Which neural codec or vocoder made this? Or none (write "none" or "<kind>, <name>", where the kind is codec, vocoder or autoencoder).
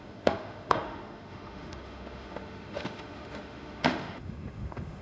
autoencoder, DAC-VAE